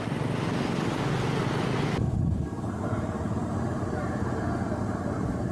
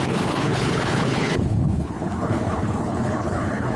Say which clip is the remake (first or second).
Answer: second